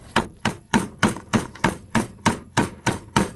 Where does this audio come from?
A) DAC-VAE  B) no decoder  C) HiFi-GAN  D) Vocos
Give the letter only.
D